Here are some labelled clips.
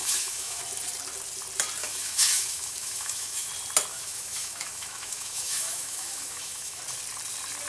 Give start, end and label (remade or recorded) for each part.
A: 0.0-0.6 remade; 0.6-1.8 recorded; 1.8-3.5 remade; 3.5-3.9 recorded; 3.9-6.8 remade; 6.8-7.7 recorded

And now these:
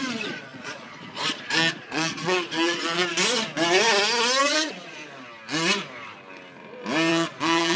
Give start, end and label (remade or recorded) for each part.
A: 0.0-3.1 remade; 3.1-4.4 recorded; 4.4-5.0 remade; 5.0-7.1 recorded; 7.1-7.8 remade

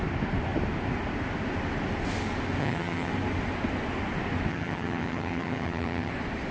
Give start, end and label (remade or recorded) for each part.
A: 0.0-2.6 recorded; 2.6-3.1 remade; 3.1-4.5 recorded; 4.5-6.1 remade; 6.1-6.5 recorded

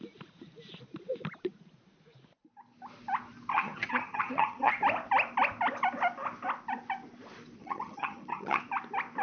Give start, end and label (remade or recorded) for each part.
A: 0.0-3.5 recorded; 3.5-4.7 remade; 4.7-7.6 recorded; 7.6-8.6 remade; 8.6-9.2 recorded

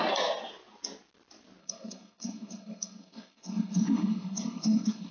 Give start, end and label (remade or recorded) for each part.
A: 0.0-1.6 recorded; 1.6-5.1 remade

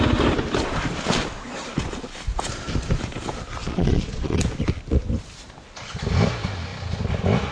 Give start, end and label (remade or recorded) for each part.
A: 0.0-3.6 recorded; 3.6-4.4 remade; 4.4-7.5 recorded

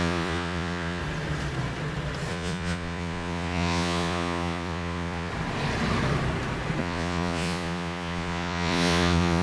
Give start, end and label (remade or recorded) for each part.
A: 0.0-1.0 remade; 1.0-2.3 recorded; 2.3-5.3 remade; 5.3-6.8 recorded; 6.8-9.4 remade

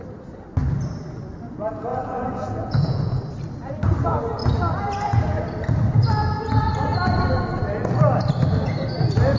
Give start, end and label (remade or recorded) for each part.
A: 0.0-1.9 recorded; 1.9-3.2 remade; 3.2-9.4 recorded